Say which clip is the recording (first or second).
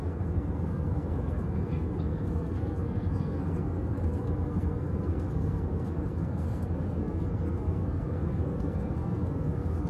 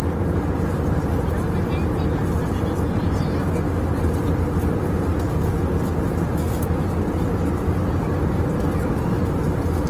second